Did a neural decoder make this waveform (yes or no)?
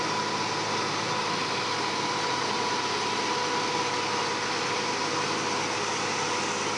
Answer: no